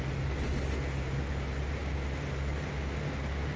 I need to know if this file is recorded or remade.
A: recorded